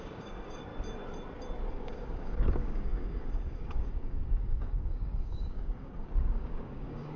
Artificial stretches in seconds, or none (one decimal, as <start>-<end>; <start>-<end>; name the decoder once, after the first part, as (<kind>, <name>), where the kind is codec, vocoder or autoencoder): 0.0-0.7 (codec, DAC); 1.7-7.2